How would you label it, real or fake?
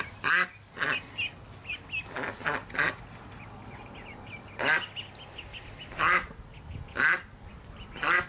real